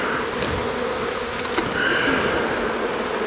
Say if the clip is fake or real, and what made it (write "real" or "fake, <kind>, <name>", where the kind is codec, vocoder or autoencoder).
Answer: real